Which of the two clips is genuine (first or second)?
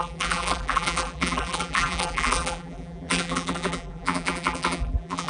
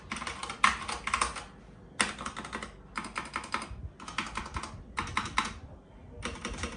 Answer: second